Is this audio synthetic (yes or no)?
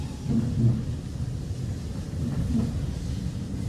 no